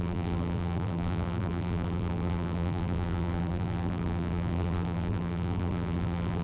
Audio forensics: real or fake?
fake